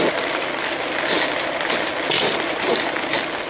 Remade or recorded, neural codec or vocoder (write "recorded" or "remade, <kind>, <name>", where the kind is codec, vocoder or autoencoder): recorded